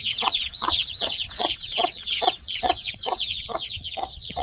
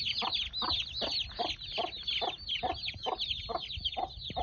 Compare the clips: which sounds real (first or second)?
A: second